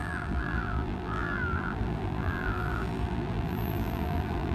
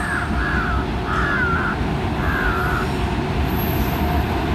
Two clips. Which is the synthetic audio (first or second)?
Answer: first